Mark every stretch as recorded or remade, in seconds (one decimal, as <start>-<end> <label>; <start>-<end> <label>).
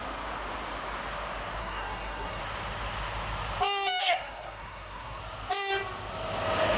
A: 0.0-1.6 recorded; 1.6-2.4 remade; 2.4-4.0 recorded; 4.0-5.2 remade; 5.2-6.8 recorded